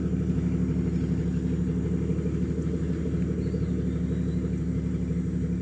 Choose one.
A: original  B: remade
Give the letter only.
A